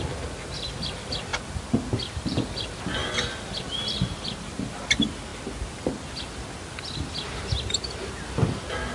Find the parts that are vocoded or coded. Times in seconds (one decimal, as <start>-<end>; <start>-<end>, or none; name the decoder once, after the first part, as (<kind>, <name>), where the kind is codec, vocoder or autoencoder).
none